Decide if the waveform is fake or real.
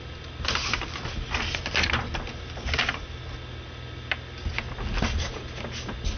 real